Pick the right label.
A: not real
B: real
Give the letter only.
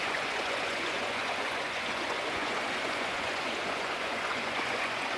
A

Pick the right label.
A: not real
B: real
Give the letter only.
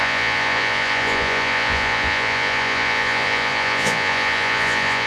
A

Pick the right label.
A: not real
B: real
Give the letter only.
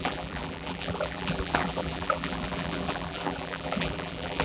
A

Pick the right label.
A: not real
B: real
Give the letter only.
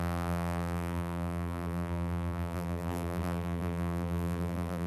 A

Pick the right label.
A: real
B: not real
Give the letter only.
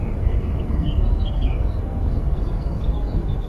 B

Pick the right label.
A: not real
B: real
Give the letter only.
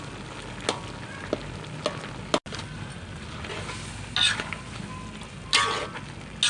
B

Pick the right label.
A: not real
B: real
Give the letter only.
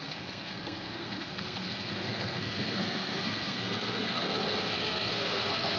A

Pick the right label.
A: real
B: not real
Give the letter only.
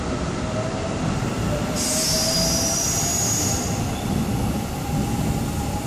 A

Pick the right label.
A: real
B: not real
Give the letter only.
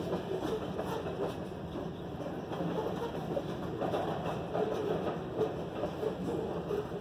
A